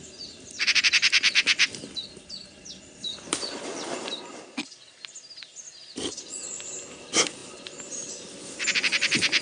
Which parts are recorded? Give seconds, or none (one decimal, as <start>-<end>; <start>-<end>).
0.0-3.1; 4.1-9.4